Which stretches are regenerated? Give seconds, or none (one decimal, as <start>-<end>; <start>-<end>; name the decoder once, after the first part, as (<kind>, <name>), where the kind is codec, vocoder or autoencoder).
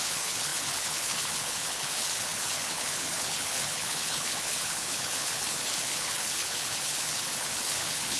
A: 0.0-8.2 (codec, HILCodec)